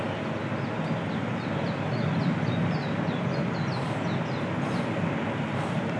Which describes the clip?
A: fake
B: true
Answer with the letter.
B